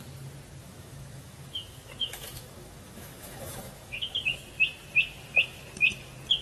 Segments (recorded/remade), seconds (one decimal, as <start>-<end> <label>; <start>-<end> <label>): 0.0-0.6 recorded; 0.6-4.4 remade; 4.4-6.4 recorded